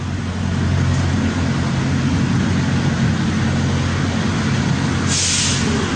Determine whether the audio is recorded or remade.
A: recorded